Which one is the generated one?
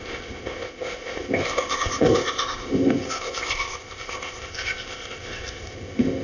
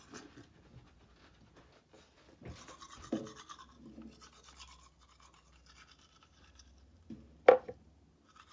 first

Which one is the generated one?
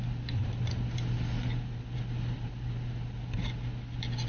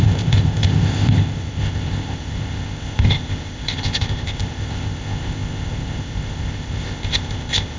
second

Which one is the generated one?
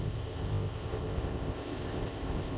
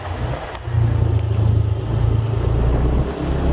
first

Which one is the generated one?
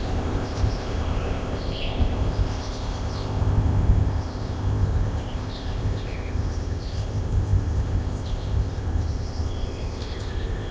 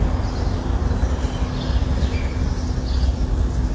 first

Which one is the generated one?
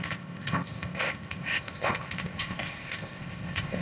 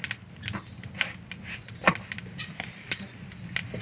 first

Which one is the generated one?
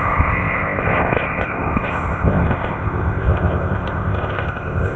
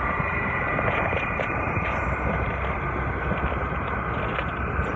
first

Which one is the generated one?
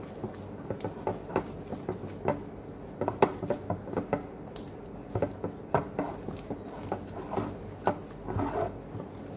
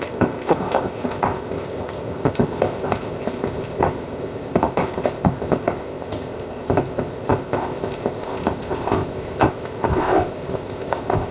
second